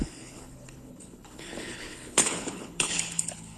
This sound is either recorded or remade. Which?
remade